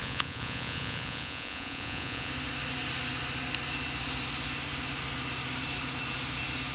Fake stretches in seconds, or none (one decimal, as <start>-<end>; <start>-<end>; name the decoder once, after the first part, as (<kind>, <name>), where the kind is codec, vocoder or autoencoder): 0.0-2.3 (vocoder, Vocos)